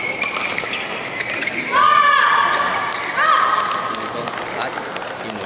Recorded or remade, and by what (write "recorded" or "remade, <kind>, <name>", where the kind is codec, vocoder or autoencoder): recorded